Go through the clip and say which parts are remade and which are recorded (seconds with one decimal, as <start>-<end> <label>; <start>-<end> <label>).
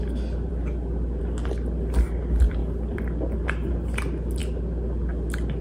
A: 0.0-2.6 recorded; 2.6-3.5 remade; 3.5-5.6 recorded